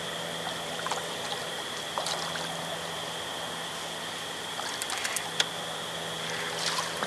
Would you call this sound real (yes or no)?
yes